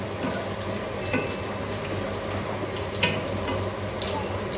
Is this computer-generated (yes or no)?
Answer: no